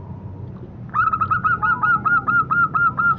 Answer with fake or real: real